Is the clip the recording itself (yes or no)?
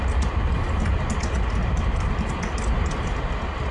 yes